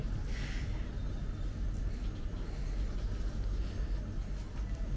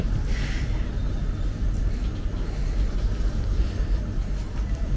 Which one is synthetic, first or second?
second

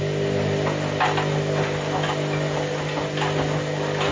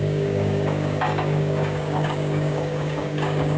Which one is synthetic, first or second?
second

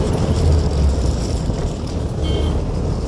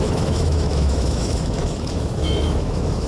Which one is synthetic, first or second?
second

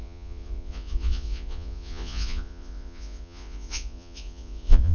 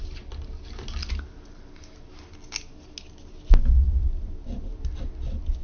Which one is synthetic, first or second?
first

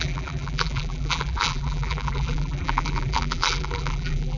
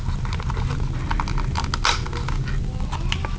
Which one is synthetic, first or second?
first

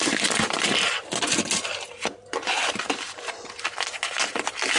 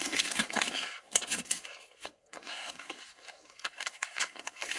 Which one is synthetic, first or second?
second